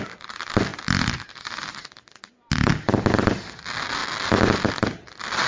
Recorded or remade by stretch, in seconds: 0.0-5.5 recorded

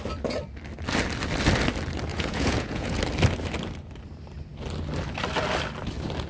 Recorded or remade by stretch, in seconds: 0.0-2.1 recorded; 2.1-3.0 remade; 3.0-6.3 recorded

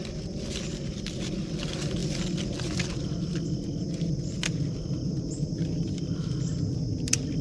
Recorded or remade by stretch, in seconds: 0.0-7.4 recorded

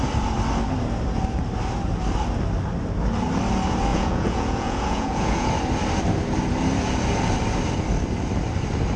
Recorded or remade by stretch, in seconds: 0.0-3.9 recorded; 3.9-5.5 remade; 5.5-9.0 recorded

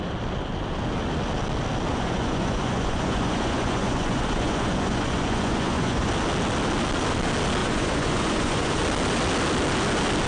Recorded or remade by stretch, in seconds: 0.0-1.9 recorded; 1.9-6.1 remade; 6.1-7.6 recorded; 7.6-8.8 remade; 8.8-10.3 recorded

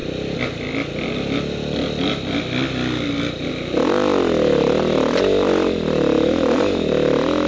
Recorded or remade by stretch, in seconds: 0.0-7.5 recorded

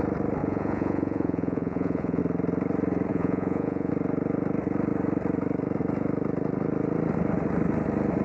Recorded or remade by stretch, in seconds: 0.0-0.4 recorded; 0.4-2.2 remade; 2.2-3.1 recorded; 3.1-3.9 remade; 3.9-8.2 recorded